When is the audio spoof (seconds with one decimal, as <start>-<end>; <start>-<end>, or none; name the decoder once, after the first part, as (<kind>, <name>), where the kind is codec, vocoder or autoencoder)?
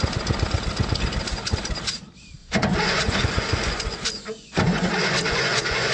2.4-5.9 (vocoder, Vocos)